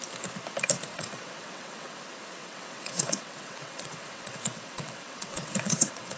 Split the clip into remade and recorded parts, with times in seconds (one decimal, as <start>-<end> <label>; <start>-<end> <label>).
0.0-0.9 recorded; 0.9-2.0 remade; 2.0-2.4 recorded; 2.4-6.2 remade